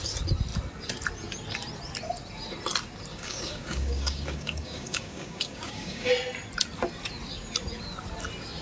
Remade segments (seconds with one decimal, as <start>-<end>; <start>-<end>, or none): 3.1-6.1